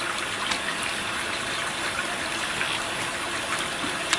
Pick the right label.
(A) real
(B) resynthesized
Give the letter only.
B